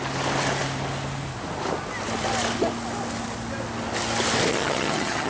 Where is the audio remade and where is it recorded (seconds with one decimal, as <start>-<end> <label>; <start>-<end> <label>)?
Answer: 0.0-4.5 recorded; 4.5-5.3 remade